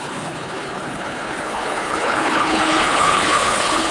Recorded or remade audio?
remade